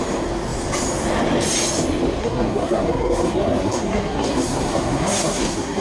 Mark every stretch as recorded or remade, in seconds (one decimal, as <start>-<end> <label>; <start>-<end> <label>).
0.0-2.2 recorded; 2.2-5.8 remade